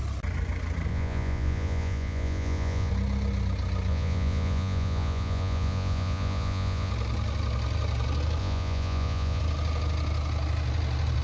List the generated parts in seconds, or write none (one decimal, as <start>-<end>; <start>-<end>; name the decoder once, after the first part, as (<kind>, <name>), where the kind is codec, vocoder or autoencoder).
0.9-2.9 (vocoder, Vocos); 3.9-6.9; 8.4-9.4